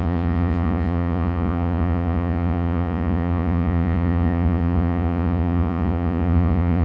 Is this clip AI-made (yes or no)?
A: yes